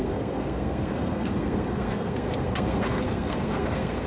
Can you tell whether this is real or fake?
fake